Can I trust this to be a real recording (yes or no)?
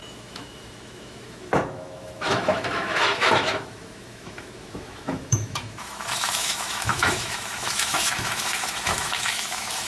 no